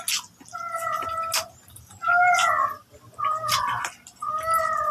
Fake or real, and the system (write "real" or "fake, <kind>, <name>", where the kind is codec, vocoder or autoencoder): real